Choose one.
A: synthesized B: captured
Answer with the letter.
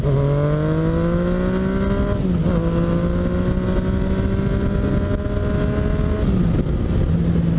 B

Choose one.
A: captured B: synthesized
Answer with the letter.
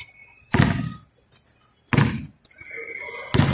A